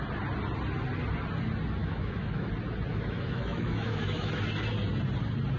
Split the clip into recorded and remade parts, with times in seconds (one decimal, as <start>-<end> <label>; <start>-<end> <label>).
0.0-1.8 recorded; 1.8-2.5 remade; 2.5-2.9 recorded; 2.9-4.3 remade; 4.3-5.6 recorded